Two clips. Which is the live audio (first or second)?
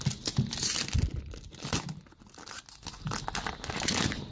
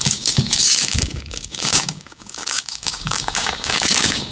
first